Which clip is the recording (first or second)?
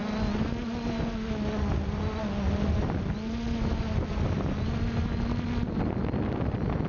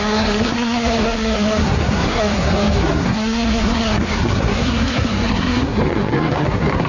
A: first